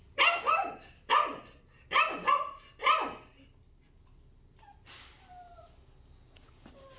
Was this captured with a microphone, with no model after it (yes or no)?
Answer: yes